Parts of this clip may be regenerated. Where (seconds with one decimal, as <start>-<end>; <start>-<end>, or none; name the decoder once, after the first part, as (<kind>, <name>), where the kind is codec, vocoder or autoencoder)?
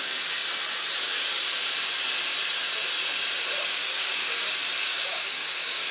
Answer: 0.0-0.4 (codec, DAC); 1.0-1.5; 3.6-4.2; 4.8-5.9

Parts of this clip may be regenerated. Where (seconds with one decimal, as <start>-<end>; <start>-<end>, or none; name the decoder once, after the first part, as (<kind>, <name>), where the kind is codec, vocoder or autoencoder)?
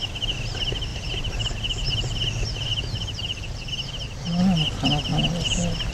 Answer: 0.9-1.4 (vocoder, BigVGAN v2); 2.7-3.6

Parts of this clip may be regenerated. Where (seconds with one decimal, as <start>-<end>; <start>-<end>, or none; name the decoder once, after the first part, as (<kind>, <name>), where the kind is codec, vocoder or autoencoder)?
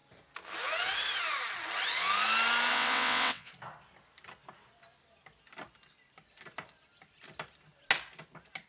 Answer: 2.7-3.5 (vocoder, WaveNeXt)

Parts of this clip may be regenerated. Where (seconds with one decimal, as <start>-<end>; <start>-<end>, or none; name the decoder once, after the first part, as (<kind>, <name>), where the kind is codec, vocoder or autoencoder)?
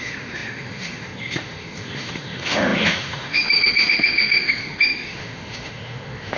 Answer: 0.0-6.4 (autoencoder, DAC-VAE)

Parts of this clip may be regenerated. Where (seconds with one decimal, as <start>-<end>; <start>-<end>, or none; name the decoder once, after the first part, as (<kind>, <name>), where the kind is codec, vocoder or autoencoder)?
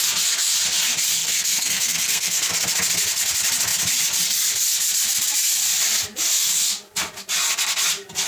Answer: 1.2-2.5 (codec, SNAC)